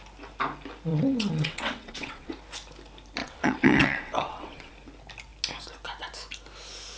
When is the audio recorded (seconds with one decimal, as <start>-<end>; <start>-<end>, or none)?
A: 0.0-0.9; 2.3-3.2; 4.7-7.0